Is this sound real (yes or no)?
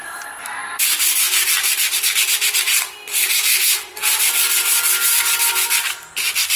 yes